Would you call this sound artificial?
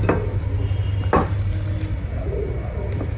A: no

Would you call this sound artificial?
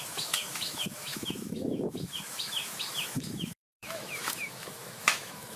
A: yes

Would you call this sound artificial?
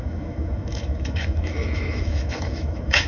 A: yes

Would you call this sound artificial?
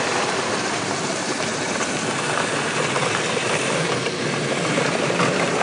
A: yes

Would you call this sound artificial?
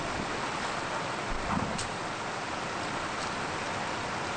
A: no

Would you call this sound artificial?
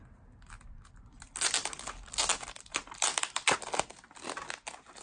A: no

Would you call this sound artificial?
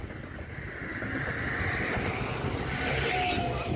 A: no